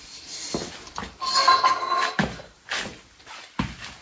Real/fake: real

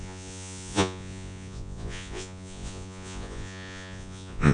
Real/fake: fake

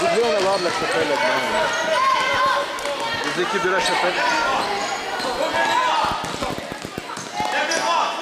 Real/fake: real